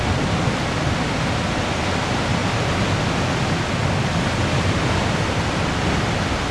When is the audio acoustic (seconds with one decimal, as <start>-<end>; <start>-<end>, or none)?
0.0-6.5